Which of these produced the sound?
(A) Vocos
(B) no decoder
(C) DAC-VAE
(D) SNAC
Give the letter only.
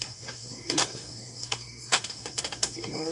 D